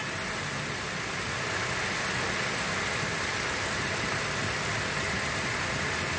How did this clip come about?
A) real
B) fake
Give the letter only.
A